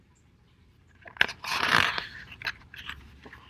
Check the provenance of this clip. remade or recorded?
remade